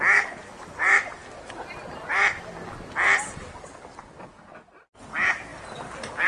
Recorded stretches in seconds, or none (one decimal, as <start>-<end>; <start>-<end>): 0.0-6.3